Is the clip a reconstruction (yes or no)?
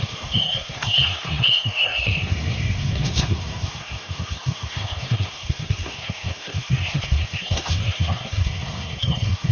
yes